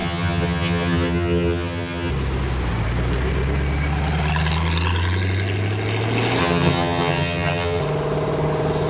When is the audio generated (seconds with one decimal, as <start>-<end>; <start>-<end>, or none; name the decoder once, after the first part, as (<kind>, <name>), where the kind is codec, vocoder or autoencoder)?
0.0-2.1 (vocoder, HiFi-GAN); 6.4-7.8